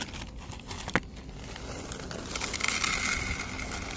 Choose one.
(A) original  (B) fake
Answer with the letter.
A